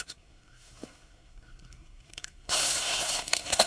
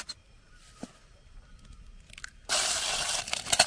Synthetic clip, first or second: first